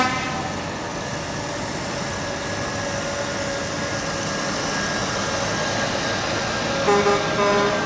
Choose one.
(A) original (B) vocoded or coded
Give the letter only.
A